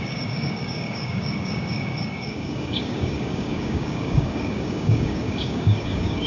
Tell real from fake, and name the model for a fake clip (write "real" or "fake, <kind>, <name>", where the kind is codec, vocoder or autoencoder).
fake, codec, DAC